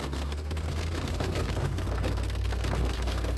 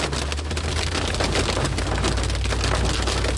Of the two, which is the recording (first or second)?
second